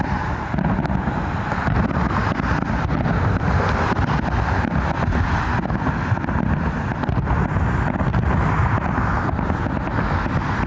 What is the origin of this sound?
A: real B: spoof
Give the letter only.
A